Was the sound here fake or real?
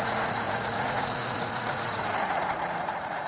fake